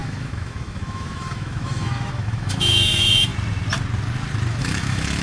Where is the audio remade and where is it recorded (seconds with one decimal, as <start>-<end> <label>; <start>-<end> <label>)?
0.0-3.3 remade; 3.3-4.6 recorded; 4.6-5.2 remade